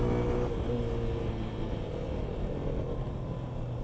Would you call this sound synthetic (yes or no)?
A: no